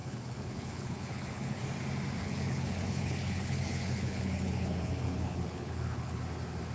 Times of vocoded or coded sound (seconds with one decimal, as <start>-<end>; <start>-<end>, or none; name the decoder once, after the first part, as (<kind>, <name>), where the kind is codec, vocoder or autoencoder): 0.0-1.6 (codec, HILCodec); 2.2-6.2